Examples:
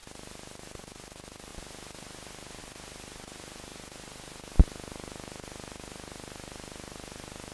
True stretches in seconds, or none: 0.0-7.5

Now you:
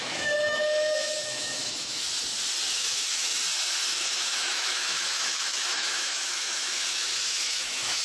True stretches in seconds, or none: 2.1-2.7; 3.4-3.9

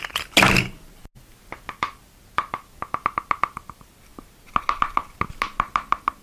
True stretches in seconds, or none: 0.0-6.2

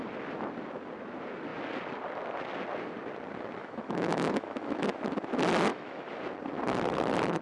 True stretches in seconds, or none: 0.0-3.6; 4.8-5.7; 6.2-7.4

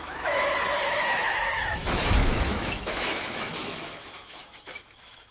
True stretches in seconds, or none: none

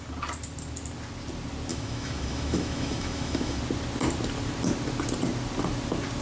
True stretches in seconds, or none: 0.0-1.7; 3.6-6.2

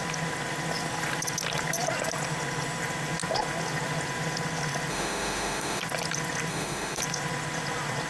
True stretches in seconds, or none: 0.0-4.9; 5.8-6.5; 7.0-8.1